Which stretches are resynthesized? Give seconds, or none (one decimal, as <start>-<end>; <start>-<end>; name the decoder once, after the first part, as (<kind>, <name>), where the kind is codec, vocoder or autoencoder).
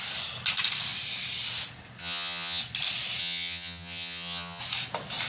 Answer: 2.0-2.6 (vocoder, HiFi-GAN); 3.2-4.6